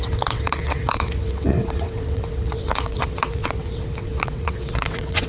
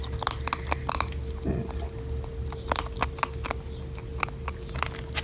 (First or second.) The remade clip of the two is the first